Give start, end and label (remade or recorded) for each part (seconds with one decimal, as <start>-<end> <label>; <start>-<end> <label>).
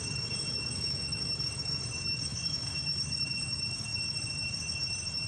0.0-5.3 remade